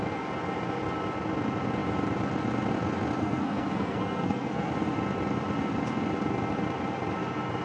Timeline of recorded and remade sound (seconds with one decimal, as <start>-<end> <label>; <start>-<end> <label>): 0.0-3.2 recorded; 3.2-4.7 remade; 4.7-7.6 recorded